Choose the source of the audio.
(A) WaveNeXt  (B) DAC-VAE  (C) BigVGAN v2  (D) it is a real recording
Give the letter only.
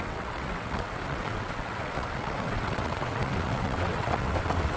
A